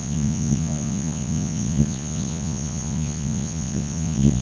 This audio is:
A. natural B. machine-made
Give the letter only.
B